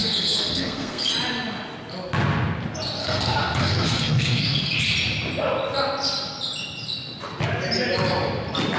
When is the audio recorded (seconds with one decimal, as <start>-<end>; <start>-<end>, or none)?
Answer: 1.1-3.0; 4.8-8.8